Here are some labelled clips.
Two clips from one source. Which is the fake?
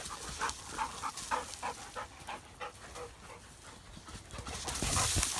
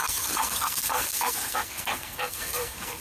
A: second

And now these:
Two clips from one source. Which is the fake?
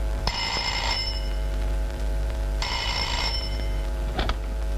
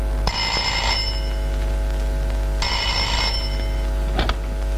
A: first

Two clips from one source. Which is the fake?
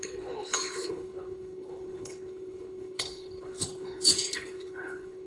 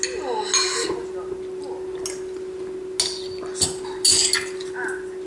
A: first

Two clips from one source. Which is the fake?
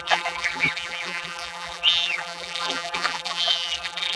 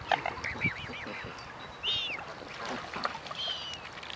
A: first